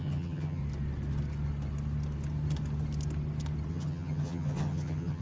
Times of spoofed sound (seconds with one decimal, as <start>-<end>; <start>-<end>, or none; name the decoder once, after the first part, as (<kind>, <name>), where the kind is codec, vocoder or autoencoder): 0.0-0.6 (vocoder, HiFi-GAN); 3.7-5.2